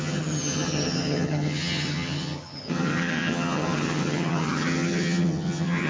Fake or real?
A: fake